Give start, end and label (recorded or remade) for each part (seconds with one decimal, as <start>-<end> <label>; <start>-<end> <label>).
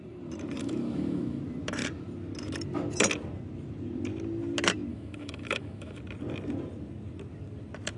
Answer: 0.0-0.6 recorded; 0.6-1.4 remade; 1.4-4.9 recorded; 4.9-6.0 remade; 6.0-8.0 recorded